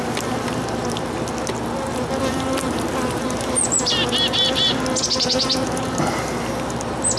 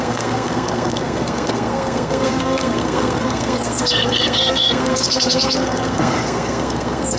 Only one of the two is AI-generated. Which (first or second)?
second